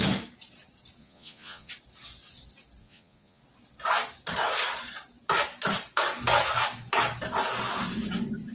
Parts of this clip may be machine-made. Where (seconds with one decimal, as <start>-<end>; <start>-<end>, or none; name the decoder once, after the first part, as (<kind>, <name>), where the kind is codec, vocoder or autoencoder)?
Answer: 1.0-1.7 (vocoder, Vocos); 2.8-3.4